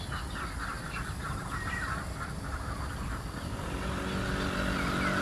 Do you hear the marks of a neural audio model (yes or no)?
no